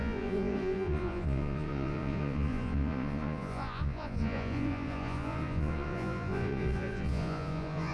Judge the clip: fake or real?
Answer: fake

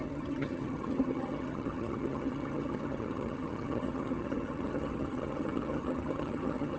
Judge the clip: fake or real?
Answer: fake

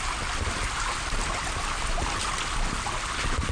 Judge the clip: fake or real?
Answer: real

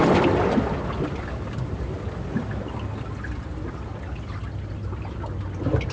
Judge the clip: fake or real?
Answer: real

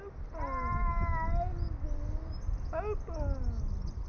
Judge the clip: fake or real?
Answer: real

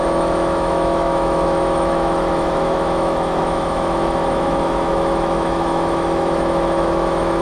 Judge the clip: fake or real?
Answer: fake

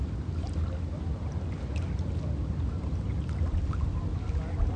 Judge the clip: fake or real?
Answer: real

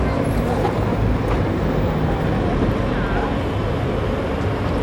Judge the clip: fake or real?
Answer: real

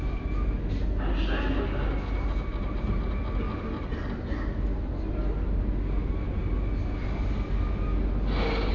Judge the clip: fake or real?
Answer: real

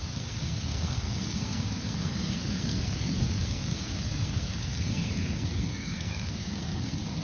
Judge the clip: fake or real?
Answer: fake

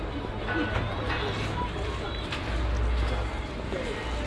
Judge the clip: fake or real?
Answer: real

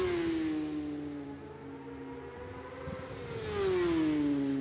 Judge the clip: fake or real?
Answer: real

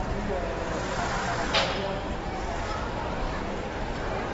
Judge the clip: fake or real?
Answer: real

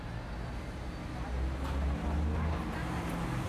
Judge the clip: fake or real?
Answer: real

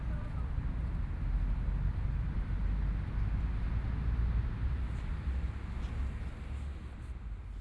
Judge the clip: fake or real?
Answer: real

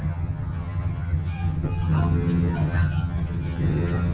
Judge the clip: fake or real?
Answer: fake